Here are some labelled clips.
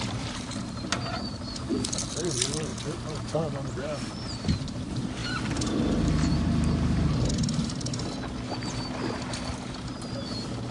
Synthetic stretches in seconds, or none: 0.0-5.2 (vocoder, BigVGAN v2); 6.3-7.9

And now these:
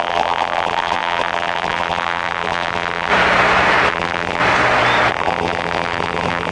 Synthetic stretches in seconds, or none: 0.0-3.1 (vocoder, BigVGAN v2); 3.9-4.4; 5.1-6.5

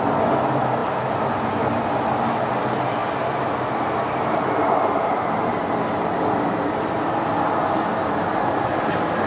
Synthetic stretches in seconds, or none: none

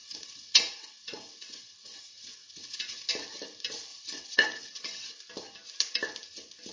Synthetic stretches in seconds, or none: 0.0-3.1 (vocoder, WaveNeXt); 3.9-5.1